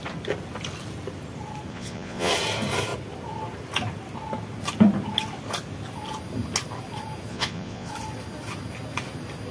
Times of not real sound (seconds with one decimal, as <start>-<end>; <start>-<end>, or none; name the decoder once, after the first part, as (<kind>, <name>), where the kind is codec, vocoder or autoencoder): 1.7-2.3 (vocoder, Vocos); 7.3-7.9